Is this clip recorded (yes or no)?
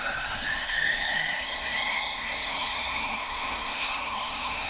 no